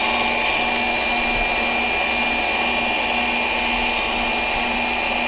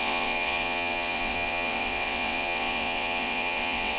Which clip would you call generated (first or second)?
second